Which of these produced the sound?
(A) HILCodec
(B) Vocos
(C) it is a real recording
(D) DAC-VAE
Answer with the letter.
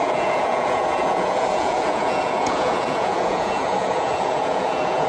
B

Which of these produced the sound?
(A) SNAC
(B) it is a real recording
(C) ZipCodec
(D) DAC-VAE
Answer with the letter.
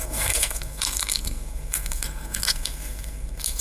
A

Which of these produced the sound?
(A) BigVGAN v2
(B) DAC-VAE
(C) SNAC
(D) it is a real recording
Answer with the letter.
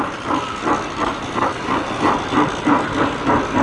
D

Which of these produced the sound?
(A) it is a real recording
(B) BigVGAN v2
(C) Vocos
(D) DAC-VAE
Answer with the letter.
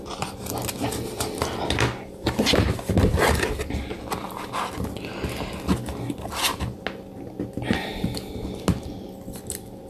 A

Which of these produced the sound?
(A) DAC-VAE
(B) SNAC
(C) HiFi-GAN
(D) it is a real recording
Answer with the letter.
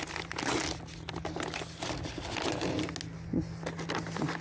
D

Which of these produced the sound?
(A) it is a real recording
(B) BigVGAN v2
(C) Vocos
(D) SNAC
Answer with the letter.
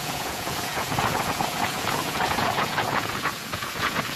C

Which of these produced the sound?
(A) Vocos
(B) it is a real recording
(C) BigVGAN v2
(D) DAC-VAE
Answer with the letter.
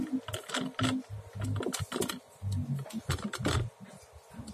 B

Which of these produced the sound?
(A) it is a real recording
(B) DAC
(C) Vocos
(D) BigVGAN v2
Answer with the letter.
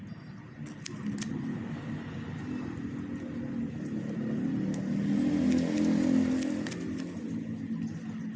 A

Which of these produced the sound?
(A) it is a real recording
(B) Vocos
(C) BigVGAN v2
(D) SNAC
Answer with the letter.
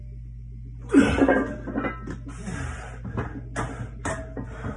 A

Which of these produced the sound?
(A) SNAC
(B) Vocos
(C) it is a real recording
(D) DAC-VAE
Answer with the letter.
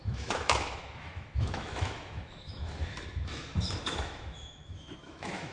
D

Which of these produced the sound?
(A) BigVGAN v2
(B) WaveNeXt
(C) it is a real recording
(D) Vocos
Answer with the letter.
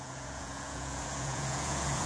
D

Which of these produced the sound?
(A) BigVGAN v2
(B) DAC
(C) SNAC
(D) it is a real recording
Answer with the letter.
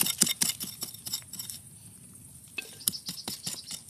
D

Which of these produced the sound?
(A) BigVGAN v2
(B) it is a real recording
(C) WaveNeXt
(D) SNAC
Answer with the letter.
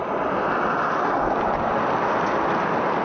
B